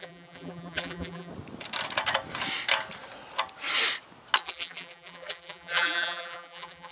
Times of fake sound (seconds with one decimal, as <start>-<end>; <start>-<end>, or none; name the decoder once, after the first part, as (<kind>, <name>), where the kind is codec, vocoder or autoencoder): 0.0-1.3 (vocoder, BigVGAN v2); 4.4-6.9